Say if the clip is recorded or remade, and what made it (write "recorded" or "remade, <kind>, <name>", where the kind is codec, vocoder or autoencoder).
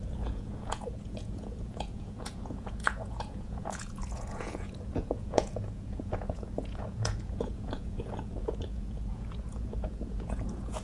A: remade, vocoder, Vocos